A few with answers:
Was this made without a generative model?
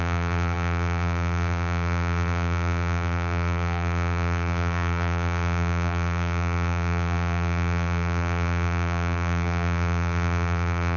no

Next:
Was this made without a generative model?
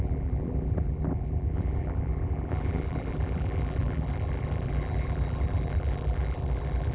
no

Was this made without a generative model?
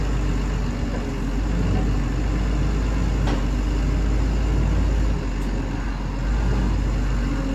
yes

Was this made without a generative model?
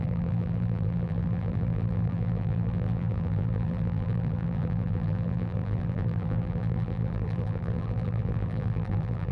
no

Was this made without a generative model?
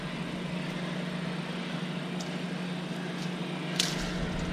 yes